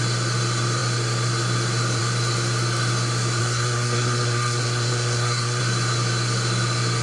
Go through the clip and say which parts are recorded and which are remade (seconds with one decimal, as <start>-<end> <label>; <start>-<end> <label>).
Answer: 0.0-3.4 recorded; 3.4-5.6 remade; 5.6-7.0 recorded